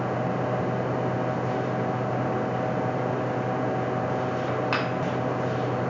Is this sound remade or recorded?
recorded